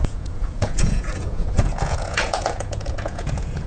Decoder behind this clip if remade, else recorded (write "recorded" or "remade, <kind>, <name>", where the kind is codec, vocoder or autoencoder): remade, vocoder, Vocos